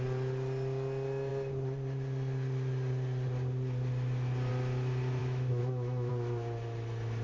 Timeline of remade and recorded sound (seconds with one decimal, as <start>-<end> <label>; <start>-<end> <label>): 0.0-5.2 recorded; 5.2-6.1 remade; 6.1-7.2 recorded

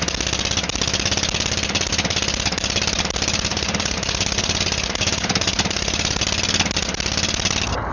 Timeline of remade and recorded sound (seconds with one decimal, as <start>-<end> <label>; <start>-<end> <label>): 0.0-3.5 recorded; 3.5-6.2 remade; 6.2-7.9 recorded

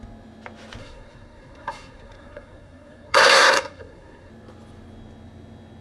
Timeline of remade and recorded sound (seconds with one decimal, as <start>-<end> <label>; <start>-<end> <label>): 0.0-0.8 recorded; 0.8-4.3 remade; 4.3-5.8 recorded

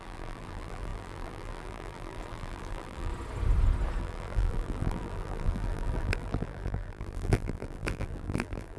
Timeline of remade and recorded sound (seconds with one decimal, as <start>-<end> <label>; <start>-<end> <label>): 0.0-3.1 remade; 3.1-4.0 recorded; 4.0-8.8 remade

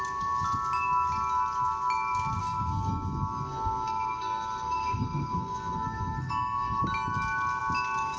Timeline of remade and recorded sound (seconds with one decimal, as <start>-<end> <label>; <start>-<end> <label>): 0.0-2.4 recorded; 2.4-6.8 remade; 6.8-8.2 recorded